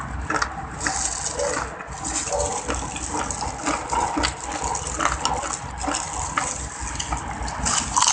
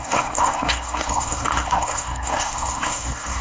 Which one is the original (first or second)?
first